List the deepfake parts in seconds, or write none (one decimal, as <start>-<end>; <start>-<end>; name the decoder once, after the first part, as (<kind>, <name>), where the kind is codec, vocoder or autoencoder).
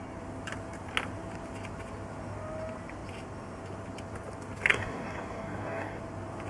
4.7-6.0 (codec, DAC)